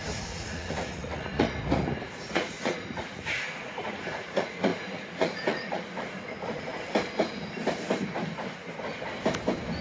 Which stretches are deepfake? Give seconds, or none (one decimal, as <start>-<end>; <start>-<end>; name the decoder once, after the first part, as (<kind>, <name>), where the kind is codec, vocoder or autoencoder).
0.0-6.7 (vocoder, Vocos)